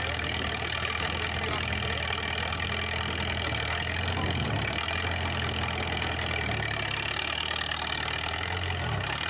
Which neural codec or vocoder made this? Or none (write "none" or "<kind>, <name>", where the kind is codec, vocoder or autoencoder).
none